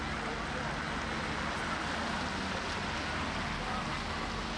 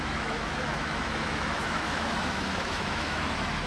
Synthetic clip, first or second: second